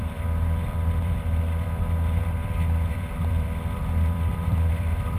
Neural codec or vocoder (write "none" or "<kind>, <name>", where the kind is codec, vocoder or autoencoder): vocoder, BigVGAN v2